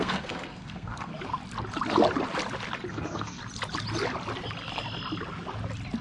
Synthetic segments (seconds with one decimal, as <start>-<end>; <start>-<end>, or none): 0.0-1.1; 2.9-3.4